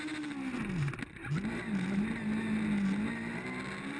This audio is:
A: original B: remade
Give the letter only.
A